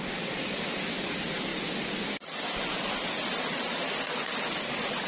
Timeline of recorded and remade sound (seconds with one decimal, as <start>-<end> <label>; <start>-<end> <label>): 0.0-5.1 recorded